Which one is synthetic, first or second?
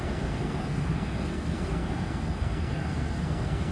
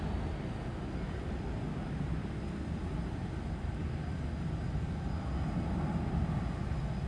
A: first